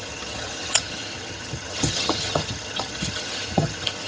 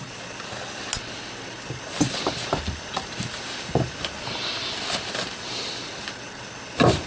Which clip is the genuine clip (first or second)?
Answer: second